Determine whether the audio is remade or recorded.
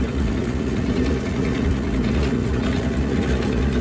remade